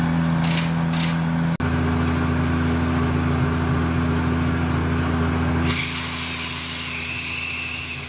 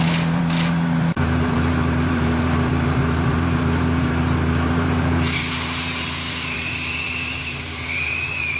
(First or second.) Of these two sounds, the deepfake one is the second